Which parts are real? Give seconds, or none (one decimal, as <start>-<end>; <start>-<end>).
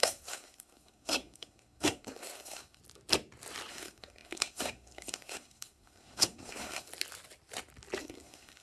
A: 2.8-3.7; 6.9-8.0